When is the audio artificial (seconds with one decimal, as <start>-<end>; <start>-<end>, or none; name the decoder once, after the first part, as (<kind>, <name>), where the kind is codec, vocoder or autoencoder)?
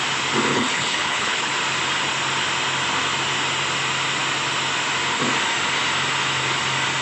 0.5-1.5 (codec, HILCodec)